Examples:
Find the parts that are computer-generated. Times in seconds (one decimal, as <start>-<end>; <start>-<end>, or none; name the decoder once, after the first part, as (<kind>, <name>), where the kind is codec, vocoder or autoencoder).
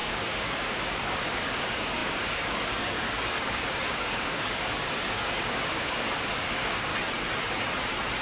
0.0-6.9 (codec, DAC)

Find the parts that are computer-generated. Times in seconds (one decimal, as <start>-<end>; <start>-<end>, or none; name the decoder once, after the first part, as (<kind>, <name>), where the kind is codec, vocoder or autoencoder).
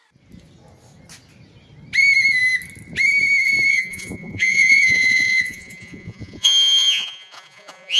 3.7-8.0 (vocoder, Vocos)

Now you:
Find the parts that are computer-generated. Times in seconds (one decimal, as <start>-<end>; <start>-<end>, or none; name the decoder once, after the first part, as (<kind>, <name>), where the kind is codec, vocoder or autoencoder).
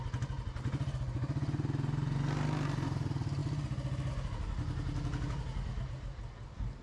none